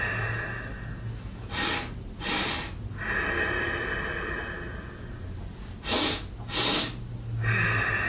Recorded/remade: recorded